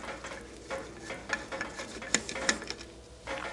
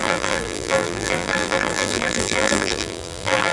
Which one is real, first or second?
first